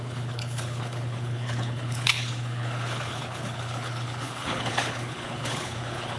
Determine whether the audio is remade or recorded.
remade